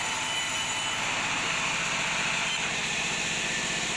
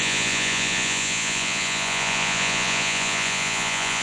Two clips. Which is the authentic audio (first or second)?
first